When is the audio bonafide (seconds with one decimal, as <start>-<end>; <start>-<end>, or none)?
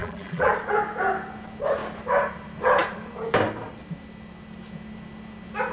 0.5-5.7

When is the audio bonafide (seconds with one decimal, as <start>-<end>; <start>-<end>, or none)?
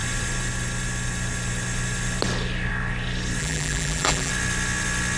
0.0-3.4; 4.3-5.2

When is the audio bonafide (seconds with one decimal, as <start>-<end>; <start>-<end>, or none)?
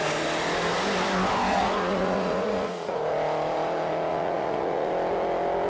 0.0-1.5; 3.0-4.1; 4.9-5.7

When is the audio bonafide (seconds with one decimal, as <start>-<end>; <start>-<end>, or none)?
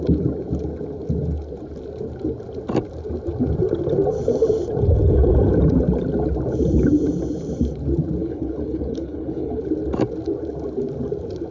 0.0-8.2; 9.6-11.5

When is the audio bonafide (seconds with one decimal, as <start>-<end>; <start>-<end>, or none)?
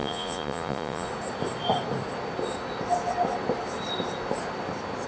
1.1-5.1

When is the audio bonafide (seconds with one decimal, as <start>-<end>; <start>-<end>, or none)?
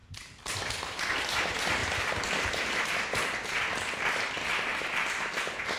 0.6-1.8; 3.0-4.5; 5.3-5.8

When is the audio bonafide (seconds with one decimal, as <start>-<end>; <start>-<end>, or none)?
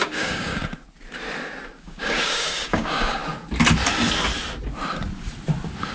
0.6-1.8; 3.2-5.9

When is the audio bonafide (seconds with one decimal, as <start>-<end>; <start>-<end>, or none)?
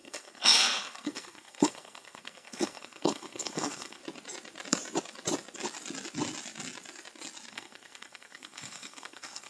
4.0-7.5